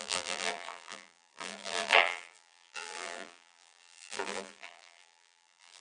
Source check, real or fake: fake